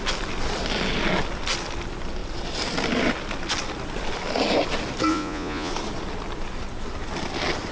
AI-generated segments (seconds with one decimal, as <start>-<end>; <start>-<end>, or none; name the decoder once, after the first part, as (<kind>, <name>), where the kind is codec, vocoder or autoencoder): 5.1-5.7 (vocoder, Vocos)